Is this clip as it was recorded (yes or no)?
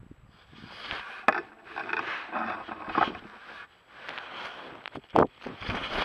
yes